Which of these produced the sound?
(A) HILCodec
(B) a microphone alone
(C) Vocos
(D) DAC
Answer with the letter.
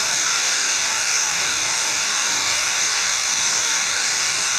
D